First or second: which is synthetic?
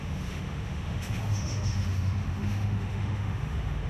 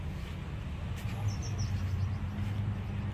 first